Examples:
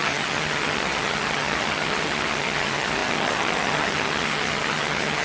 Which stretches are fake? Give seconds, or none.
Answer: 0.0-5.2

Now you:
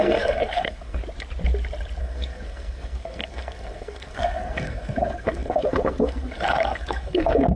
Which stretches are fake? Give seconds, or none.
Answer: 0.0-1.0; 2.0-7.6

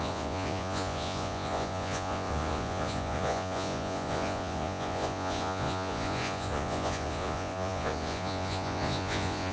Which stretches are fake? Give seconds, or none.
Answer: 0.0-9.5

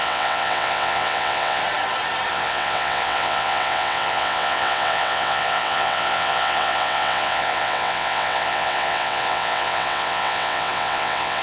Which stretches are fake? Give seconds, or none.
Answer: 0.0-1.6; 2.3-11.4

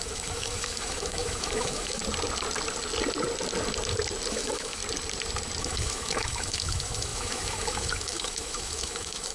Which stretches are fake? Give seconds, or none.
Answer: 0.0-2.0; 4.3-4.8; 5.6-9.3

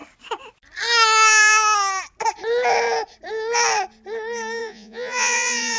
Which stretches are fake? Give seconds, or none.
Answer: 4.6-5.8

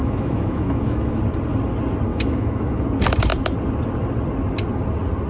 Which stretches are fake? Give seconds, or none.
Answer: 0.0-1.2; 2.1-2.8